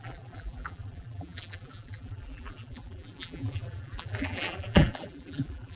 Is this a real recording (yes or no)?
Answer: no